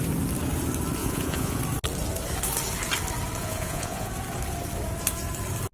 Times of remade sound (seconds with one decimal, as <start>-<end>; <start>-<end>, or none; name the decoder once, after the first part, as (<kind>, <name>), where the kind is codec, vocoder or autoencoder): 1.0-1.6 (vocoder, Vocos); 3.4-4.1

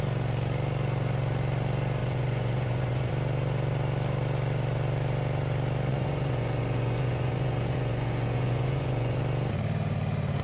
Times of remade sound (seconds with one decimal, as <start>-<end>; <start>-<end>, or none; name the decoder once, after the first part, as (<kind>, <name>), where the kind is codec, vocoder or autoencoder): 2.0-3.1 (vocoder, Vocos); 5.9-9.2

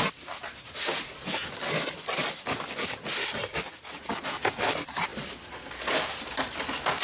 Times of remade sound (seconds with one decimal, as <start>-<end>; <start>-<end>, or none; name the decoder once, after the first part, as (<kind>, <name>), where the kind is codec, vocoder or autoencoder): none

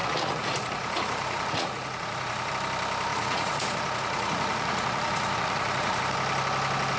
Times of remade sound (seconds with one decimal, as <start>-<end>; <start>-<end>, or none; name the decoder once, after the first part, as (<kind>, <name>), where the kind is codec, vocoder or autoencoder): 0.0-2.5 (vocoder, Vocos); 3.1-6.0

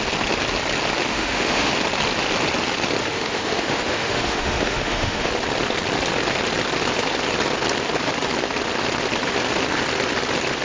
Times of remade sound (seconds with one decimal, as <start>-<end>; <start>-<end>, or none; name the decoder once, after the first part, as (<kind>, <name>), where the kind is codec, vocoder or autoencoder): 1.1-1.7 (autoencoder, DAC-VAE); 3.0-5.3